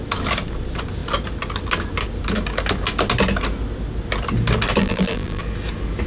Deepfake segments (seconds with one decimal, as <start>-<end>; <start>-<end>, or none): 4.8-5.4